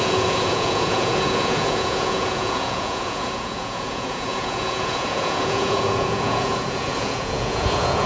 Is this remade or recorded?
remade